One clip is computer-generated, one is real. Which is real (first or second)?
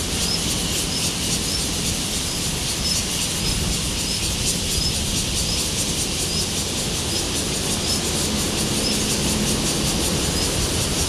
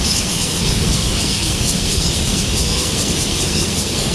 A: first